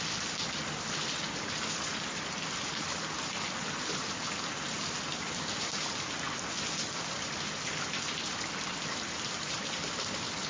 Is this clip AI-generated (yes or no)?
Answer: no